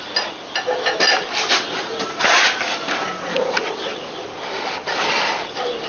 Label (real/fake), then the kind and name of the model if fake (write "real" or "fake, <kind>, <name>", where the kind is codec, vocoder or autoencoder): real